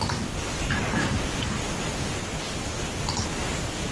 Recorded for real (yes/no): yes